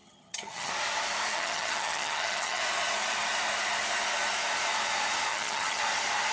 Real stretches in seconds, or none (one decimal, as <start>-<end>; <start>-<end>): 0.7-1.3; 2.6-5.3; 5.8-6.3